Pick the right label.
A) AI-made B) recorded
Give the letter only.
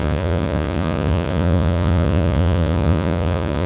A